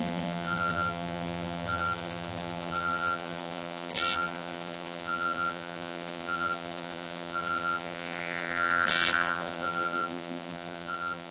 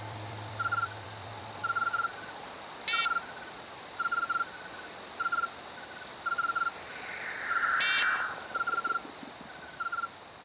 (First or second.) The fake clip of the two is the first